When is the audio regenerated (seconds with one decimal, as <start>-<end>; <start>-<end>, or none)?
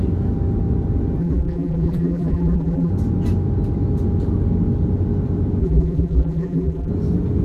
1.2-2.9; 5.6-6.9